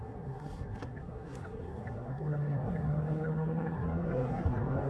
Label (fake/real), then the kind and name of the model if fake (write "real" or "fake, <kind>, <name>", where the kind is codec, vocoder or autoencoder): fake, codec, SNAC